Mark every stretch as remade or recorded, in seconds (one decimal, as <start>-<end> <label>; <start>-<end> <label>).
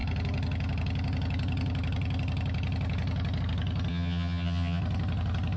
0.0-3.9 recorded; 3.9-4.8 remade; 4.8-5.6 recorded